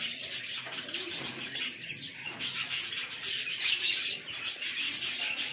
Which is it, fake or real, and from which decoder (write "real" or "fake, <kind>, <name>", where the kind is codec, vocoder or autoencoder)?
real